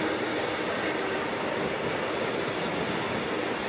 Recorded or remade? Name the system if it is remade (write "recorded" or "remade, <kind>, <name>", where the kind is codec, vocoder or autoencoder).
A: recorded